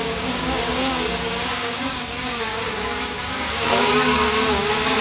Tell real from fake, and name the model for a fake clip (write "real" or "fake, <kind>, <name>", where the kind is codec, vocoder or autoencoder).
fake, codec, DAC